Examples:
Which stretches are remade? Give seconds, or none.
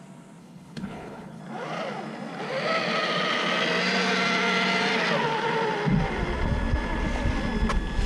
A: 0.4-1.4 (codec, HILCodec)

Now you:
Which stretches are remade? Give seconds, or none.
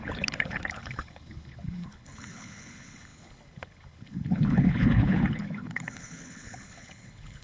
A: 0.0-7.4 (codec, HILCodec)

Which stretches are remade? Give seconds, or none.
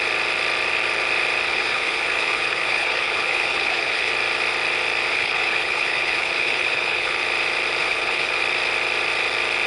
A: 1.5-4.1 (codec, HILCodec); 5.1-7.2; 7.8-8.4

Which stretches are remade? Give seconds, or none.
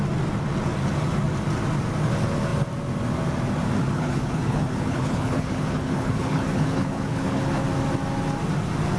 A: 3.8-7.6 (codec, HILCodec)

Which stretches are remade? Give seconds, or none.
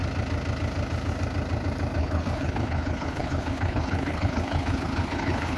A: 2.0-5.6 (codec, HILCodec)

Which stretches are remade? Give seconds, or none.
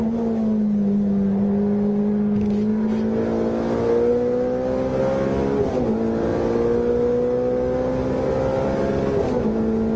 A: none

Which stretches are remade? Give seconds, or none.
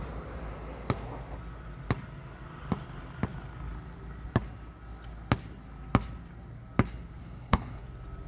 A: 7.2-7.8 (codec, HILCodec)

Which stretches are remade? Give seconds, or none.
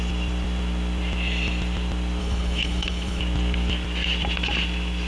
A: 2.2-3.2 (codec, HILCodec)